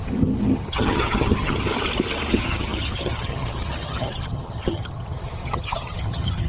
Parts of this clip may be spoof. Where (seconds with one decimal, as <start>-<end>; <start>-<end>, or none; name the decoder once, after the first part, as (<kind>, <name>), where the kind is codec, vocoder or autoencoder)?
0.0-1.7 (vocoder, HiFi-GAN); 2.3-6.5